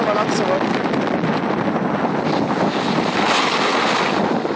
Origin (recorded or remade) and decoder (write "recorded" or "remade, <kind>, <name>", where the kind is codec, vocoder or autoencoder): recorded